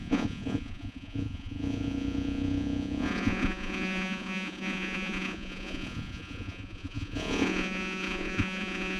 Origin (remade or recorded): remade